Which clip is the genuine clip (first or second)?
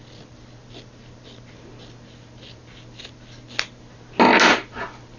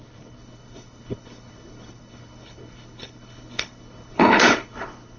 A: first